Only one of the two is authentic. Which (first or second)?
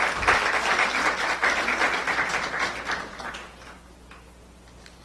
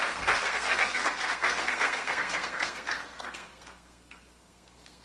first